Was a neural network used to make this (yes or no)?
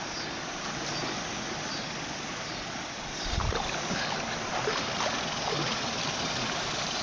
no